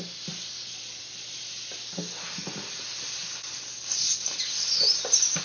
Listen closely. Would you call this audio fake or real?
real